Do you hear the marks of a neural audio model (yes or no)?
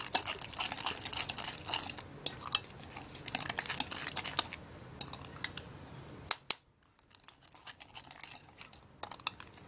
no